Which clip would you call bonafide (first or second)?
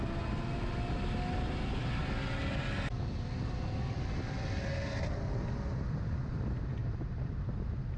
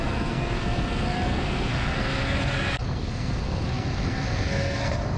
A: first